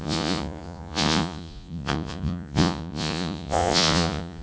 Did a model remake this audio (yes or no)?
yes